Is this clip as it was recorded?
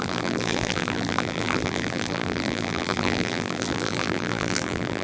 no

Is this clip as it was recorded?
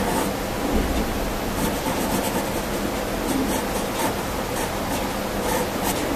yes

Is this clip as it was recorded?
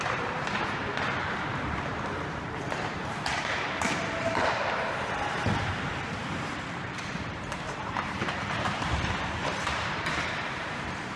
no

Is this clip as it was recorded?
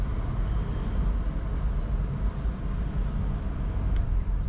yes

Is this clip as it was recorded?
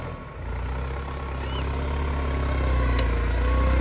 yes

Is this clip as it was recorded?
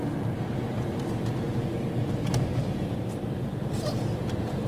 no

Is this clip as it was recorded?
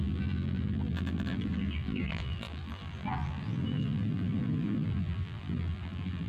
no